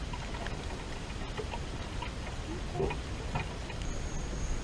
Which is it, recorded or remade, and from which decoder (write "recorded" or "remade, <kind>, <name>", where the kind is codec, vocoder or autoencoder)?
recorded